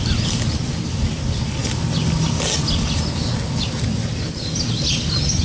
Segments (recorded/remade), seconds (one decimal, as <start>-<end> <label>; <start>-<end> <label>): 0.0-5.4 recorded